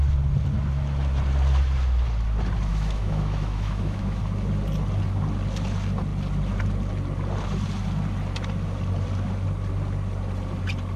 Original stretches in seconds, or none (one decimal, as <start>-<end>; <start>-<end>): 0.0-2.7; 4.2-11.0